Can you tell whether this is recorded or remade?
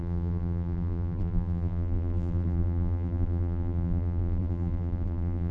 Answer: remade